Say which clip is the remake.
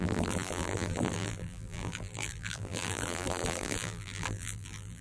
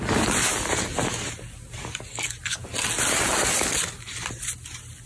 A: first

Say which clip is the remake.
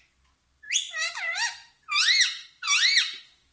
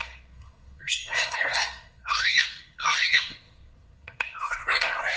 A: second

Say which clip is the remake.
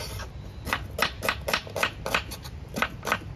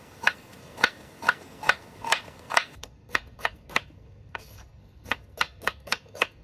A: second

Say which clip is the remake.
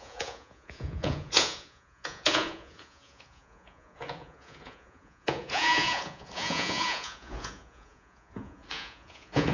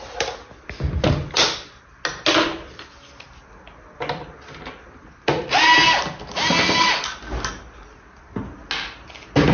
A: first